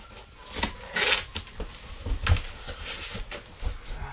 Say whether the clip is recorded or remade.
recorded